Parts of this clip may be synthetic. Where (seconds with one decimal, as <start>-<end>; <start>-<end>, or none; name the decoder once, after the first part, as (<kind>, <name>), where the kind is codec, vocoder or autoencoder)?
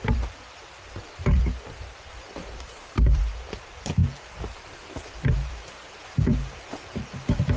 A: 0.0-7.6 (vocoder, BigVGAN v2)